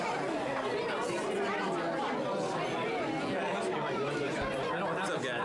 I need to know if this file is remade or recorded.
recorded